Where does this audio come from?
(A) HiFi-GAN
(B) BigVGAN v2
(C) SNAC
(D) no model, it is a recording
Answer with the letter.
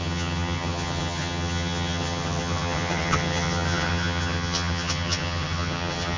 A